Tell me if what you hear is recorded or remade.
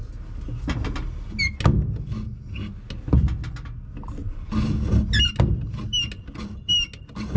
recorded